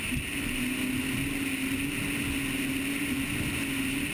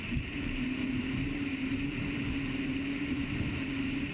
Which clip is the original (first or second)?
first